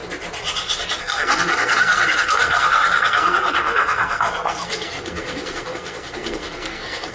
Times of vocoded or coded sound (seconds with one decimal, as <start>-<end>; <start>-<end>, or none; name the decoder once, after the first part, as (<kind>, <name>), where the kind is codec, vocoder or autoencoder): 1.0-7.1 (codec, SNAC)